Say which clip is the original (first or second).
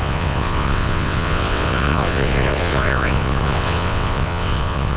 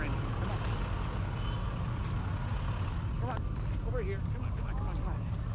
second